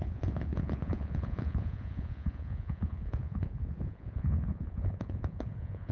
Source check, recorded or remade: remade